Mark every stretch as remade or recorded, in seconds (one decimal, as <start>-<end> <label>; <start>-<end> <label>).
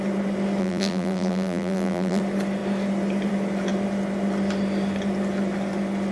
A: 0.0-0.6 recorded; 0.6-2.2 remade; 2.2-6.1 recorded